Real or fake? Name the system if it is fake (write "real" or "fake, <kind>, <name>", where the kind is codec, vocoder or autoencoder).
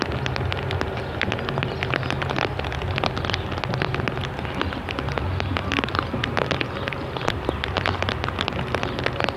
real